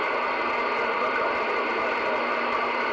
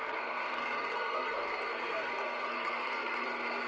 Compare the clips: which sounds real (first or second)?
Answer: first